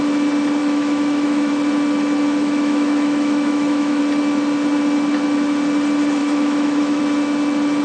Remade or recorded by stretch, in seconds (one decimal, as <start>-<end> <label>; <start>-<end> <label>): 0.0-0.6 recorded; 0.6-1.5 remade; 1.5-2.4 recorded; 2.4-4.0 remade; 4.0-6.2 recorded; 6.2-7.0 remade; 7.0-7.8 recorded